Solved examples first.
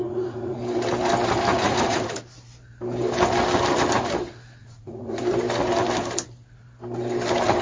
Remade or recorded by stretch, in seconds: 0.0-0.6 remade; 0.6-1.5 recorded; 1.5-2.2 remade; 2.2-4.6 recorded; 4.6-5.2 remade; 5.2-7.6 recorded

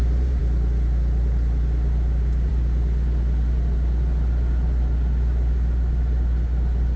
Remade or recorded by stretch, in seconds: 0.0-7.0 recorded